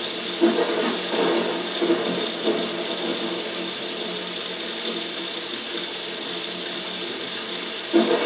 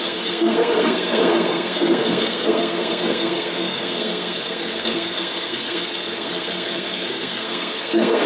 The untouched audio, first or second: first